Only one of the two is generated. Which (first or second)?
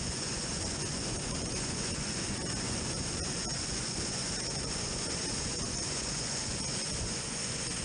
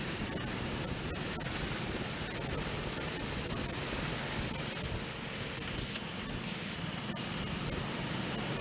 first